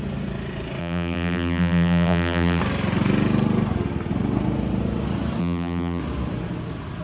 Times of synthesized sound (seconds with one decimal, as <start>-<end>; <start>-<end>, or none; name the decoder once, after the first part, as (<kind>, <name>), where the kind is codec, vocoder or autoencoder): 0.8-2.6 (vocoder, BigVGAN v2); 5.4-6.0